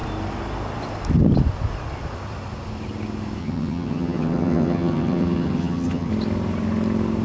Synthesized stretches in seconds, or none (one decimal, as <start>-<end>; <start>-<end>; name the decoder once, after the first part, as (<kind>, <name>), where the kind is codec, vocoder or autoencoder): 3.4-6.1 (vocoder, HiFi-GAN)